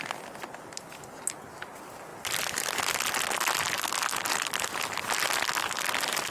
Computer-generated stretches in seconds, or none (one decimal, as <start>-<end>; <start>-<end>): none